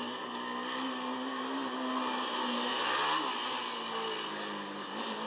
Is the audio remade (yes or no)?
no